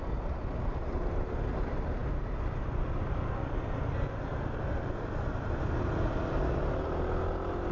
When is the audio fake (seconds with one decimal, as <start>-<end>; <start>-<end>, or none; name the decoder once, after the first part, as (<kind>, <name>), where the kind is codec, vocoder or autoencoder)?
none